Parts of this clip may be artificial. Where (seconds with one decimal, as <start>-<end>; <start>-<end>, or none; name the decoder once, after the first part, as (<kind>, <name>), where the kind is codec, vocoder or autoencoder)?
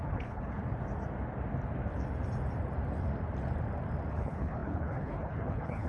0.0-0.6 (codec, HILCodec); 4.1-5.9